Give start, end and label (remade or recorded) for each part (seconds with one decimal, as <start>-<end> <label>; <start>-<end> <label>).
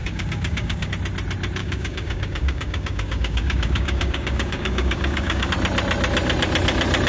0.0-0.9 remade; 0.9-1.6 recorded; 1.6-5.5 remade; 5.5-7.1 recorded